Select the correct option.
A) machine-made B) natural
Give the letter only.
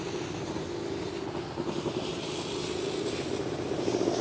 B